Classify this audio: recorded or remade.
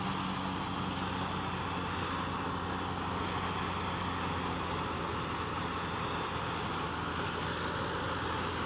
recorded